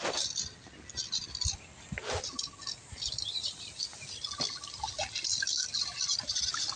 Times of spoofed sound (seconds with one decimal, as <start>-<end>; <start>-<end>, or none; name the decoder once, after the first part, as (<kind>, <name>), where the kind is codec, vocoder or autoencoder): none